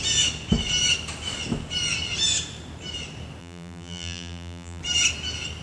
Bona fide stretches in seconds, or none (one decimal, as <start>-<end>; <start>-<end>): 0.0-3.4; 4.8-5.6